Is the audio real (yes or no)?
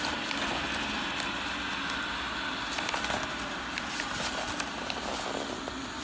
yes